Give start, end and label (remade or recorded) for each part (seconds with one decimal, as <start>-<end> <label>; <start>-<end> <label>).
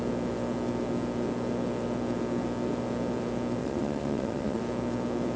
0.0-3.6 recorded; 3.6-4.6 remade; 4.6-5.4 recorded